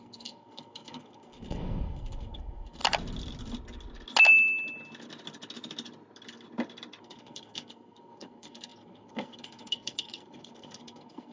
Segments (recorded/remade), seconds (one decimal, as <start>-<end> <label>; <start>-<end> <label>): 0.0-2.8 remade; 2.8-7.0 recorded; 7.0-11.3 remade